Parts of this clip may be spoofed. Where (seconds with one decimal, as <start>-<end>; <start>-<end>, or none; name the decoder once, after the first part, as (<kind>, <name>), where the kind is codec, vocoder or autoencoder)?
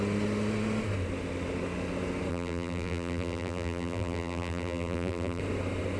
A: 2.3-5.4 (vocoder, BigVGAN v2)